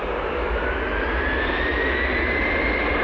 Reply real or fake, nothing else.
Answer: real